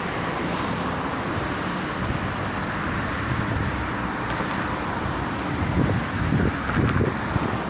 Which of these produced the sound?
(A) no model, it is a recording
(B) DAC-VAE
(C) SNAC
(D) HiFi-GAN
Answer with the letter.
A